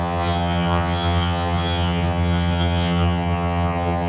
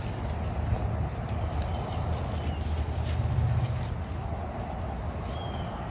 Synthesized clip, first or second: first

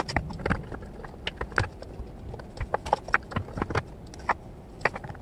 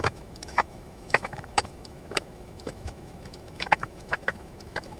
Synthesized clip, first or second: second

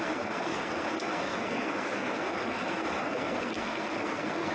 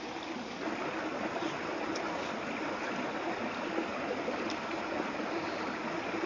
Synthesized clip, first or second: first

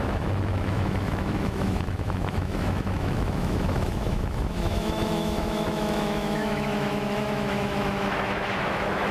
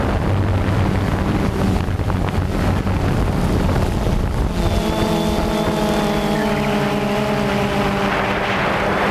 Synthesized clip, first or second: first